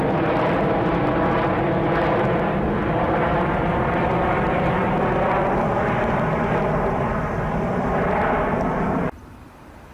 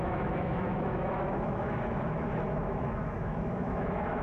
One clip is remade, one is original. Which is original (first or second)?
first